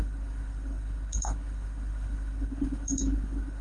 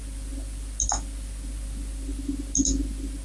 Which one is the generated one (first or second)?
first